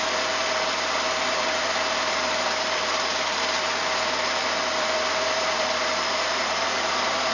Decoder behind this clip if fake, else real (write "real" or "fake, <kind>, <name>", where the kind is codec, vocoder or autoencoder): fake, vocoder, BigVGAN v2